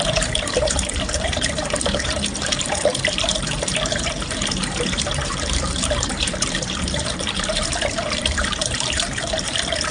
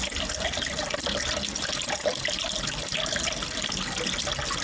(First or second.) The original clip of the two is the second